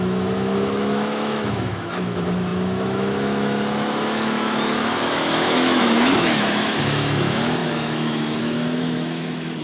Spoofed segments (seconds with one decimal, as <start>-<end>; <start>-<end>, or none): 0.0-9.6